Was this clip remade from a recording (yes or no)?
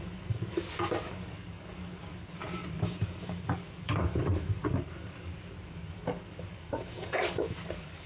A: yes